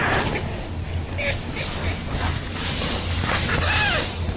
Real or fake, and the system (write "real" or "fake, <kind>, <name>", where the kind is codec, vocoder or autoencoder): real